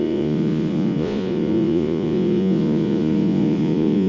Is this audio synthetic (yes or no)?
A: yes